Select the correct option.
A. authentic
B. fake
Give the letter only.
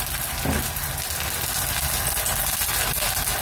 A